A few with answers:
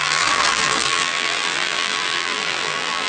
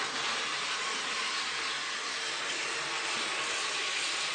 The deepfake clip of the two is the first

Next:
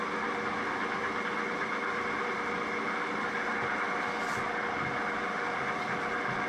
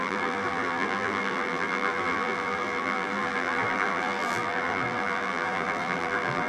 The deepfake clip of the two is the second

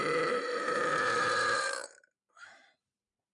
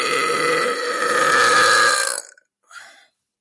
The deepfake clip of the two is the first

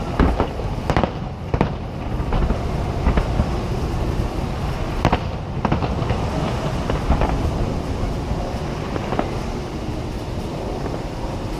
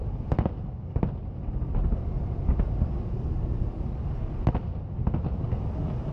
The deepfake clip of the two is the first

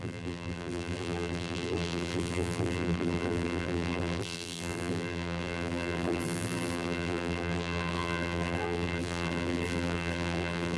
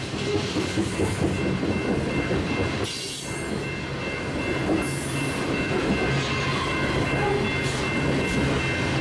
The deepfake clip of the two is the first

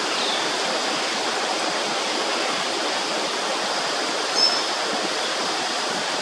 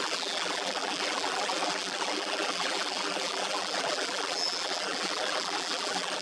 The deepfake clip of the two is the second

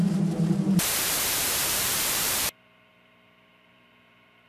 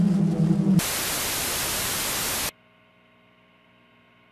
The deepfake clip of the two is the first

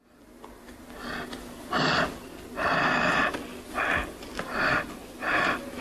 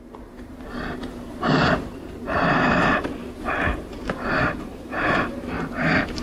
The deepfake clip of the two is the second